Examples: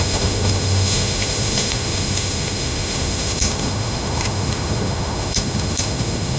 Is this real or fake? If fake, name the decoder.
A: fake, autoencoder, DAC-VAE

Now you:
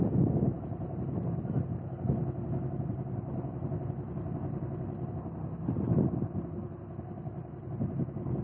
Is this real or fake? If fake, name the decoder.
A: real